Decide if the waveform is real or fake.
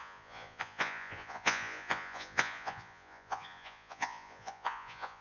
fake